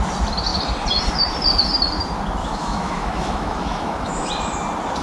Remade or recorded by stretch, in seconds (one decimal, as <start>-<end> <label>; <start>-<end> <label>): 0.0-2.4 recorded; 2.4-4.3 remade; 4.3-5.0 recorded